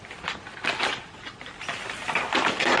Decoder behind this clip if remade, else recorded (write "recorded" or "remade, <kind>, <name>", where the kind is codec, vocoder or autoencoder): recorded